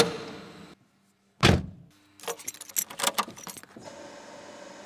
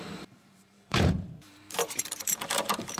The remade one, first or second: second